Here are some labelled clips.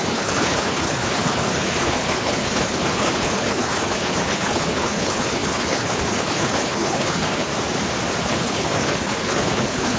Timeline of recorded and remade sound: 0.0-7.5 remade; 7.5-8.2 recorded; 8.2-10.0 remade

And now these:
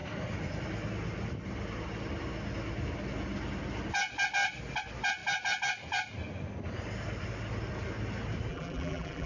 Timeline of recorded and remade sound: 0.0-8.5 recorded; 8.5-9.3 remade